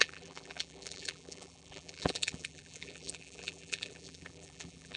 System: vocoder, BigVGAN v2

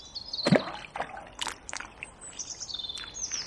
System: none